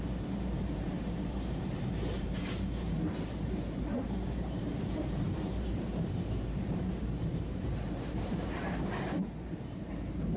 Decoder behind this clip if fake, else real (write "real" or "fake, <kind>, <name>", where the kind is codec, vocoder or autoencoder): fake, vocoder, BigVGAN v2